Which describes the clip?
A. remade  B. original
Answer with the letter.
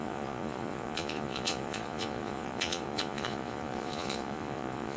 A